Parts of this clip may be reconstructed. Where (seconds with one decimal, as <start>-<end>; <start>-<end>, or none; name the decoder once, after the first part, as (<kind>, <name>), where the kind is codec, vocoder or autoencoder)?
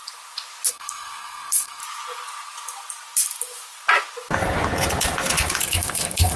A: 0.7-1.8 (codec, SNAC); 5.6-6.4